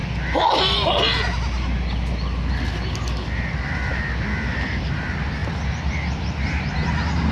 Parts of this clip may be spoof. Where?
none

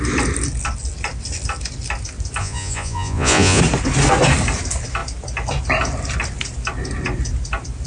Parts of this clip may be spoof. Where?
2.4-3.6 (vocoder, Vocos)

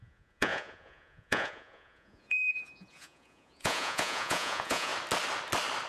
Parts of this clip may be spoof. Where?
0.0-4.9 (vocoder, Vocos)

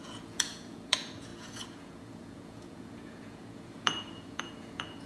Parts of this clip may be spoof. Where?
0.0-5.1 (vocoder, Vocos)

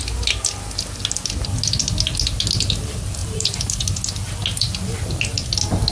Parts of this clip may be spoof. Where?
3.2-3.8 (vocoder, BigVGAN v2)

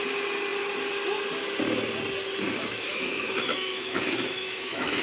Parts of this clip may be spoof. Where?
2.7-5.0 (autoencoder, DAC-VAE)

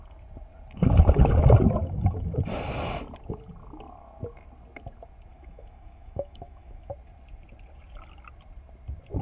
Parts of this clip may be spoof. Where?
1.8-2.4 (autoencoder, DAC-VAE); 5.3-6.9